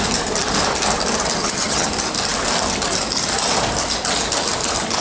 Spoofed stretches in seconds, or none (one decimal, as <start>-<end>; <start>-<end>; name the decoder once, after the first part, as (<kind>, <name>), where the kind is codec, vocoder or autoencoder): 1.4-1.9 (vocoder, HiFi-GAN)

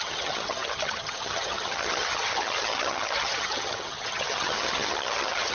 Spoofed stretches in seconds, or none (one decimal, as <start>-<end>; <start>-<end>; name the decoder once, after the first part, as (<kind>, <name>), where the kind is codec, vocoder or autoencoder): 0.0-5.5 (vocoder, HiFi-GAN)